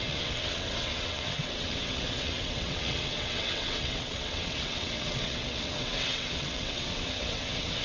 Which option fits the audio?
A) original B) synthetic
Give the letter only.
B